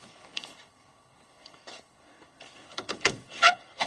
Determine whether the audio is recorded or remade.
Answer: remade